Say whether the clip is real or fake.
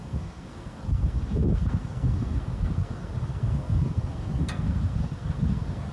fake